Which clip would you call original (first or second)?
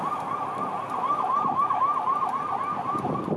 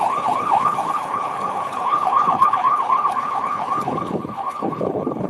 first